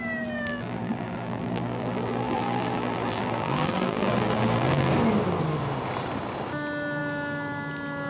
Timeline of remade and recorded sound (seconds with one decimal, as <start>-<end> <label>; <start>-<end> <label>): 0.0-0.5 recorded; 0.5-4.9 remade; 4.9-8.1 recorded